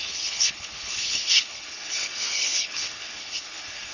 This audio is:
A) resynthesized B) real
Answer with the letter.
A